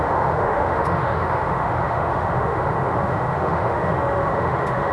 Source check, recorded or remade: remade